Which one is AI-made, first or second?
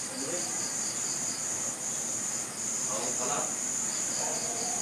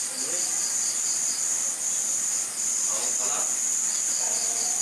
first